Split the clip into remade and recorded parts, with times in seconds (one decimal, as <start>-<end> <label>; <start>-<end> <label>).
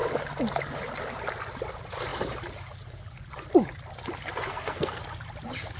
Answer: 0.0-4.5 recorded; 4.5-5.0 remade; 5.0-5.8 recorded